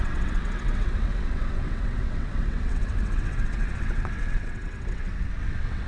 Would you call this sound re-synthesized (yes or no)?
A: yes